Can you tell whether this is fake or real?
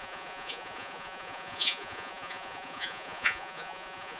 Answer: fake